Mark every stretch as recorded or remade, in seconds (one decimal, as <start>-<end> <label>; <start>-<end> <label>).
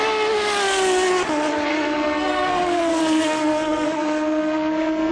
0.0-1.7 recorded; 1.7-5.1 remade